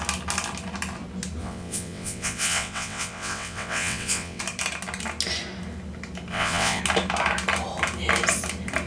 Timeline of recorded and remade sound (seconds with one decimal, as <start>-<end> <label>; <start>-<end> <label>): 0.0-1.4 recorded; 1.4-4.4 remade; 4.4-6.3 recorded; 6.3-6.8 remade; 6.8-8.9 recorded